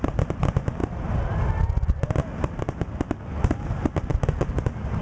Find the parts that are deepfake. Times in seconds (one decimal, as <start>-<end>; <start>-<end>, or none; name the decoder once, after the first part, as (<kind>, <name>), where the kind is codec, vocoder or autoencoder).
none